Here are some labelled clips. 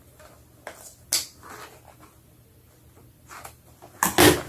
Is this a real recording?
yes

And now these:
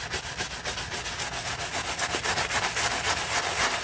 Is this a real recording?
yes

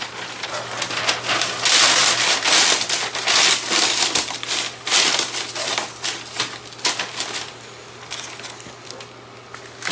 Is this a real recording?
yes